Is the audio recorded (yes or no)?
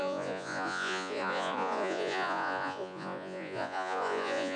no